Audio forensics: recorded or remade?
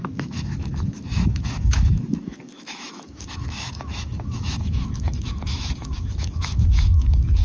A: remade